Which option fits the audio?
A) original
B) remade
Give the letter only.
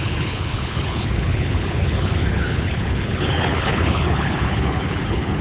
B